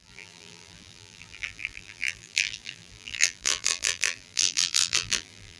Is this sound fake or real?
fake